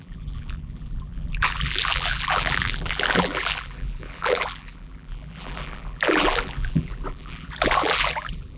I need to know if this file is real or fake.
fake